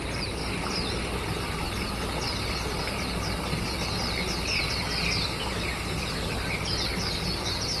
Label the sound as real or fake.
real